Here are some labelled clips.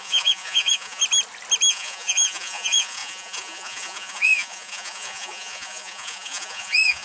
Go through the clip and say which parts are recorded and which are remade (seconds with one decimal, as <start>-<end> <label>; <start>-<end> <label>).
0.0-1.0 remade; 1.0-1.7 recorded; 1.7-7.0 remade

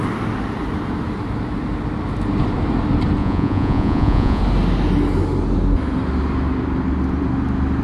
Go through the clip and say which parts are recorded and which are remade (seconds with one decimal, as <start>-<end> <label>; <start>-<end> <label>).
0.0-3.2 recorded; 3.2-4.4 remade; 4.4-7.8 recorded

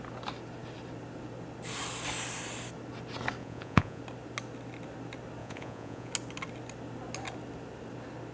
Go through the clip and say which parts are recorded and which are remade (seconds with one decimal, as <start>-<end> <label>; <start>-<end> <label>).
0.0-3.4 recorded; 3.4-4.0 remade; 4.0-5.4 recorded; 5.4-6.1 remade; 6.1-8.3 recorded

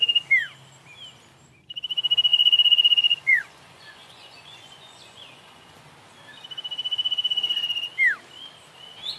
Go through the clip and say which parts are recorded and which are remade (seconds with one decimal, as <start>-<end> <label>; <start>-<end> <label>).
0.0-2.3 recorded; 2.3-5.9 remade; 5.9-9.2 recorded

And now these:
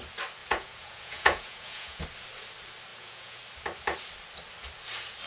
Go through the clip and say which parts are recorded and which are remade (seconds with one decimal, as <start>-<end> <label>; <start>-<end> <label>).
0.0-0.4 recorded; 0.4-2.0 remade; 2.0-2.9 recorded; 2.9-3.4 remade; 3.4-5.3 recorded